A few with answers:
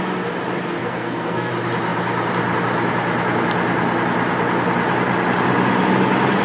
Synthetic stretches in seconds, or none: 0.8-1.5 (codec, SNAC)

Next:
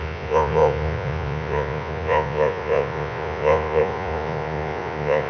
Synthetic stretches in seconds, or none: 0.0-5.3 (vocoder, Vocos)